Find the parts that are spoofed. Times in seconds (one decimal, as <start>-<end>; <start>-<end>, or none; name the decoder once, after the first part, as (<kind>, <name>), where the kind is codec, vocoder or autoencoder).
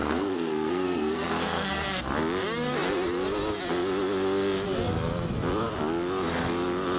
0.0-2.0 (codec, SNAC)